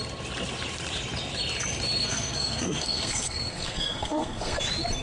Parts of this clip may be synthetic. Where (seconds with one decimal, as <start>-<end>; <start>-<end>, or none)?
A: 2.0-4.6

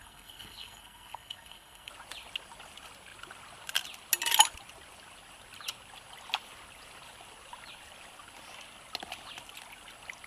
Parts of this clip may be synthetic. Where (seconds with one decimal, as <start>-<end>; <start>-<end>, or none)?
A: 0.0-1.9

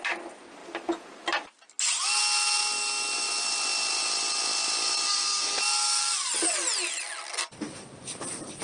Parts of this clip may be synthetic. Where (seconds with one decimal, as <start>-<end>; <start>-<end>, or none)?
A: none

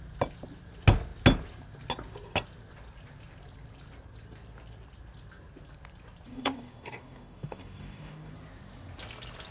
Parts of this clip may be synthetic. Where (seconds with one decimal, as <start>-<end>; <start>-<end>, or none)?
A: 6.3-8.3

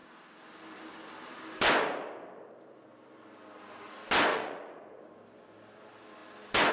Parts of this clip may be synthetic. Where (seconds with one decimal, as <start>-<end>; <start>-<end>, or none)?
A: 4.3-5.0

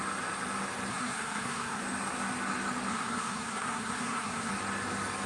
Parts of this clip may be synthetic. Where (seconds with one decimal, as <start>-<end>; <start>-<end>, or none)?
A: 0.9-1.8; 2.9-4.5

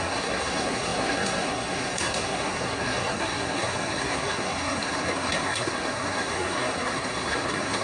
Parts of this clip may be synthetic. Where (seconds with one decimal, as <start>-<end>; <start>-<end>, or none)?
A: 0.0-7.8